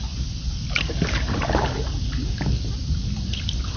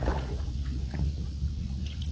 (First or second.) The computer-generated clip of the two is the second